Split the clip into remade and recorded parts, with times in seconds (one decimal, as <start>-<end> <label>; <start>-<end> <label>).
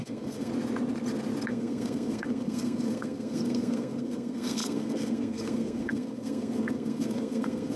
0.0-0.5 remade; 0.5-1.5 recorded; 1.5-7.8 remade